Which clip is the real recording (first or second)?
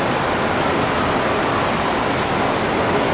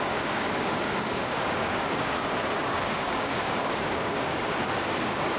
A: first